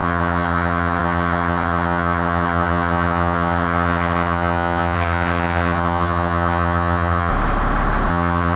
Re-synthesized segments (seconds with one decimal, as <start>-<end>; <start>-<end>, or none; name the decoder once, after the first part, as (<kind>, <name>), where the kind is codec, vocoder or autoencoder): 0.0-7.3 (vocoder, HiFi-GAN); 8.1-8.6